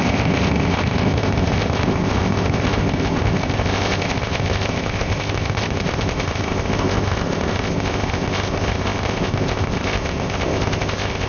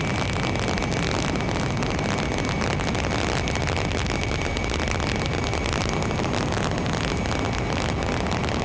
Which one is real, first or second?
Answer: second